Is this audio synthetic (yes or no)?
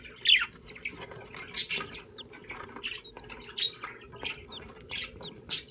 no